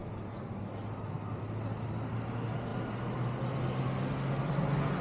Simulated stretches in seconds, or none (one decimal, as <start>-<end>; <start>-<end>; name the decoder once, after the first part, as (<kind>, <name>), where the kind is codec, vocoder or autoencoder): none